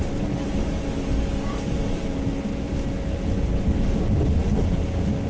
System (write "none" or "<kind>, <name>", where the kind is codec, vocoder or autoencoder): none